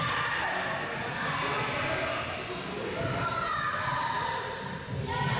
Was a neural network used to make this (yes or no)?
no